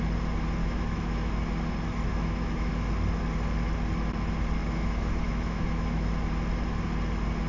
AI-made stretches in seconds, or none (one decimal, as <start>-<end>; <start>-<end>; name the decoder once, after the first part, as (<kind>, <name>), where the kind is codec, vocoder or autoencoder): 0.6-1.3 (autoencoder, DAC-VAE); 2.1-2.7; 4.6-6.1